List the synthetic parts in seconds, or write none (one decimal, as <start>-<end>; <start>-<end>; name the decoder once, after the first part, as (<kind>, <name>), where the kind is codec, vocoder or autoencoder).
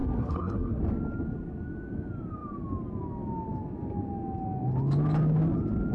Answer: 0.0-0.8 (codec, SNAC)